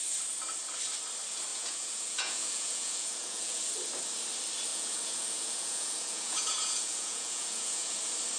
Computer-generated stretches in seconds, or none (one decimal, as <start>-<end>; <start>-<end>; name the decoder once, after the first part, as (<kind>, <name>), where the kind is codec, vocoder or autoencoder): 1.5-3.6 (vocoder, Vocos); 4.7-8.0

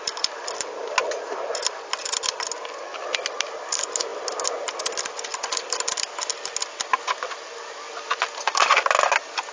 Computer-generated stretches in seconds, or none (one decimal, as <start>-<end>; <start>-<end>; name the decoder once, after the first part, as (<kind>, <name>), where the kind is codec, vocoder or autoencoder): none

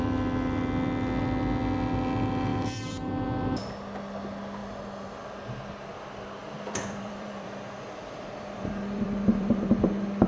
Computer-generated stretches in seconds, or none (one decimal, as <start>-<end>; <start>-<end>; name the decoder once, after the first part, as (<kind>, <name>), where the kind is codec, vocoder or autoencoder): 2.5-3.1 (vocoder, BigVGAN v2); 4.6-5.4; 6.4-9.7

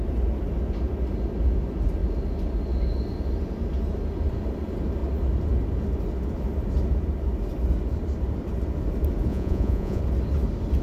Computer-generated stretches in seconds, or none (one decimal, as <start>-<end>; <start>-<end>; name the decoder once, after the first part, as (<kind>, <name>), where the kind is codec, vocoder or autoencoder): 9.3-10.0 (vocoder, Vocos)

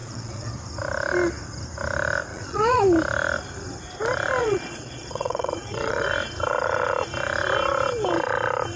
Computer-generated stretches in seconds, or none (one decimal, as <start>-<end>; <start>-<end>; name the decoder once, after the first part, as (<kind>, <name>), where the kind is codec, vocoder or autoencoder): 0.0-0.5 (vocoder, Vocos); 2.3-2.8; 4.4-6.1